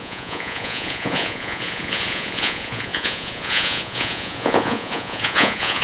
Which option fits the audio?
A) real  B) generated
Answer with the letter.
B